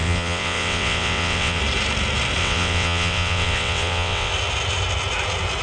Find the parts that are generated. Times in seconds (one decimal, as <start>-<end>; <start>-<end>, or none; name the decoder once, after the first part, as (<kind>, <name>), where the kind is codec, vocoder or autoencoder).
0.0-1.6 (vocoder, WaveNeXt); 2.4-4.3